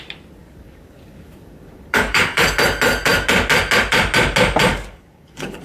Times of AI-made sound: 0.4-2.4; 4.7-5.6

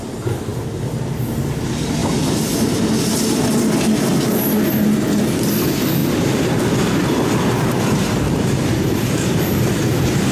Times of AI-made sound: 6.0-6.6; 7.0-9.7

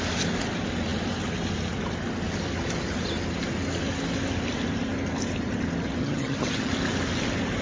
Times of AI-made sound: 6.0-6.7

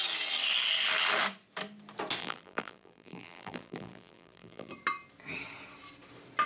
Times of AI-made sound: 2.2-4.7

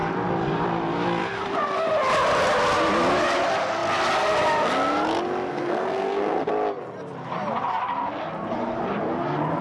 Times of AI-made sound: 5.5-6.5

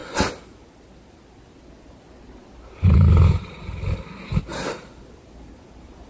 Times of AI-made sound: 2.4-6.1

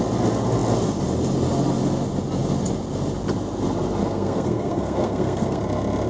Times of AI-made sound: 4.0-5.6

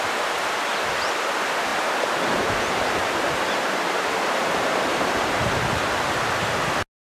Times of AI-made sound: 1.7-5.2